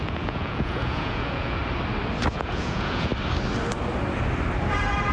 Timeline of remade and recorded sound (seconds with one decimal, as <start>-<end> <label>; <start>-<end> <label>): 0.0-1.6 remade; 1.6-2.3 recorded; 2.3-3.1 remade; 3.1-5.1 recorded